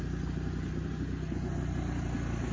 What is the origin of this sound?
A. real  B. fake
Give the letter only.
A